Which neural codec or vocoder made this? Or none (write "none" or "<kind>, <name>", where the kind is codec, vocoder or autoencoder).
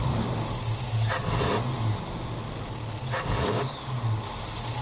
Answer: none